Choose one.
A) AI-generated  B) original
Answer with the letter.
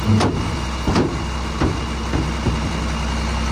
B